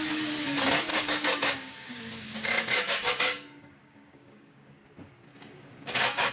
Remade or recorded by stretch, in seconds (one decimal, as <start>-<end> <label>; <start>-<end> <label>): 0.0-0.9 recorded; 0.9-4.7 remade; 4.7-5.3 recorded; 5.3-6.3 remade

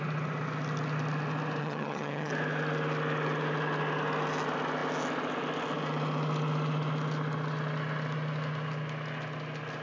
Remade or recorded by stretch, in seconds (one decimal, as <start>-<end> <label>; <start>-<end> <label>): 0.0-1.6 recorded; 1.6-2.3 remade; 2.3-9.8 recorded